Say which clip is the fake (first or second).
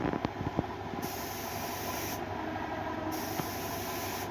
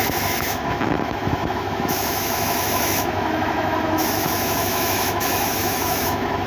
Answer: second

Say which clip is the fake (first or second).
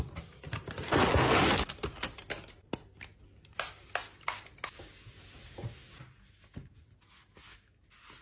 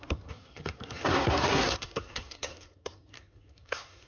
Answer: second